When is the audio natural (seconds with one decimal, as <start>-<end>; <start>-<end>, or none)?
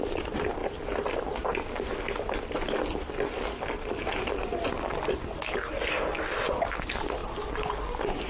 0.0-8.3